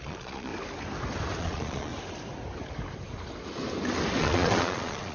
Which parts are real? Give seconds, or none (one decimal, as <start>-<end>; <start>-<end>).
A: 0.5-1.4; 1.9-4.2